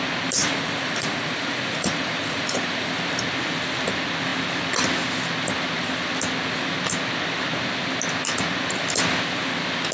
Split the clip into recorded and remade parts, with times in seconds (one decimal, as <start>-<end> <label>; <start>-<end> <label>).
0.0-0.4 recorded; 0.4-2.9 remade; 2.9-9.9 recorded